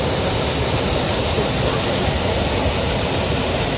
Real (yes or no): yes